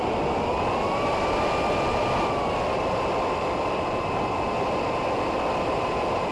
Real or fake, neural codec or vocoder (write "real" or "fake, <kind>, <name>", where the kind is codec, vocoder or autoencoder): real